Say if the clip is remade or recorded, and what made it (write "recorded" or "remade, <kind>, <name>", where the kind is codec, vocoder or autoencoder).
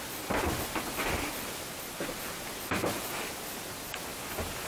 recorded